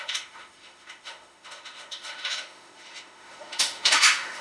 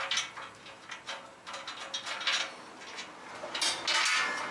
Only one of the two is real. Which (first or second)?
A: second